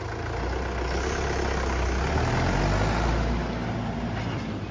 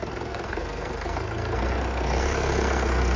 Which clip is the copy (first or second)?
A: second